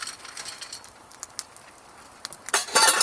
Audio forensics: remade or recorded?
recorded